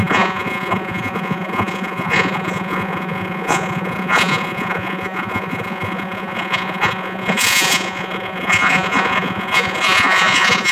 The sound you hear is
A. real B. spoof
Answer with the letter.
B